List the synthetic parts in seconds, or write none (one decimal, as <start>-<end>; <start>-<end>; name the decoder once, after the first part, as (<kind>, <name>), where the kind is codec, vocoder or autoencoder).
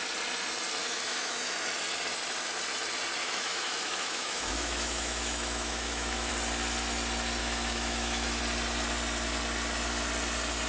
0.8-1.5 (autoencoder, DAC-VAE); 3.2-6.3; 7.4-8.4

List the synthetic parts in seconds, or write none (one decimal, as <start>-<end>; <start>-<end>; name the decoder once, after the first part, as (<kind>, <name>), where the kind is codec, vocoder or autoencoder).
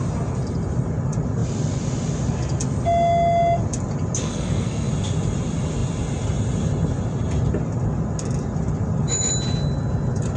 4.2-4.9 (codec, SNAC)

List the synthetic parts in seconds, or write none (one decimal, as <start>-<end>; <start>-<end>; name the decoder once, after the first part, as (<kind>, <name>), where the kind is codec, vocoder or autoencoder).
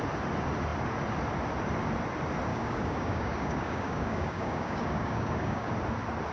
2.5-5.7 (codec, DAC)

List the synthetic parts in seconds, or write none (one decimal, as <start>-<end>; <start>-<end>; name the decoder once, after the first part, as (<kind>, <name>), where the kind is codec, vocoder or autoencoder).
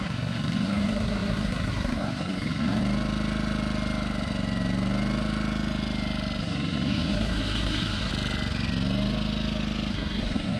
0.0-2.8 (codec, SNAC); 6.4-8.1; 9.9-10.6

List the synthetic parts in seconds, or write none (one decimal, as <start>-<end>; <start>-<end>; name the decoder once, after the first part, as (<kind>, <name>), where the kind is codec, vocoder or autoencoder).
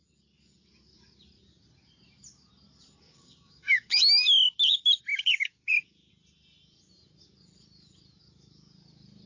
3.0-4.1 (codec, DAC); 5.1-6.1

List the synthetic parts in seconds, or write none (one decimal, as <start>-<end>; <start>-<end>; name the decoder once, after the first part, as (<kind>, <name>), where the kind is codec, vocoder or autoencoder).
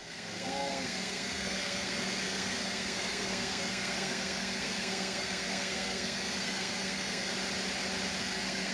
0.0-7.3 (codec, SNAC); 8.2-8.7